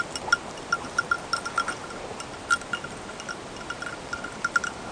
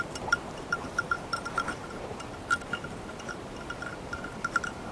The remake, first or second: second